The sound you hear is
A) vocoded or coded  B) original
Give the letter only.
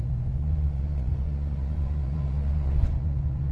A